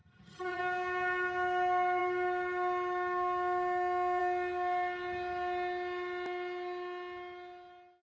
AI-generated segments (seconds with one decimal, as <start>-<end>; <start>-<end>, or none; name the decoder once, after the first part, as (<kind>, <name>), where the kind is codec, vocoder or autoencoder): 0.0-0.6 (vocoder, HiFi-GAN)